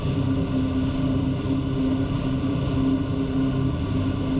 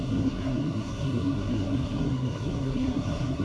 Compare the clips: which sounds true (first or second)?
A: first